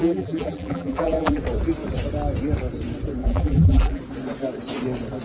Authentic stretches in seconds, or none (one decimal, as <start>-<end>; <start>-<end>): 1.4-3.2; 4.0-5.2